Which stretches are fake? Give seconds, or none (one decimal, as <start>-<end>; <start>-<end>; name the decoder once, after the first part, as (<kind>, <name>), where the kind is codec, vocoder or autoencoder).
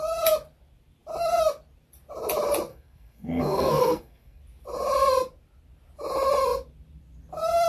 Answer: 2.7-4.4 (codec, SNAC)